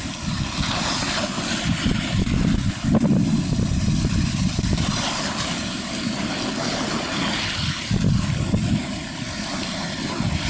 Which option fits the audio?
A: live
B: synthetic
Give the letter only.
A